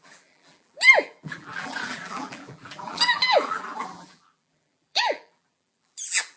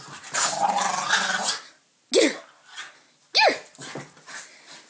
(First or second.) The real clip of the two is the second